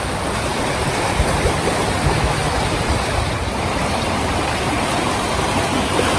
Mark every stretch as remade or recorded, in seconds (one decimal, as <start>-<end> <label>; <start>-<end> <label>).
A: 0.0-0.5 recorded; 0.5-1.7 remade; 1.7-2.4 recorded; 2.4-6.2 remade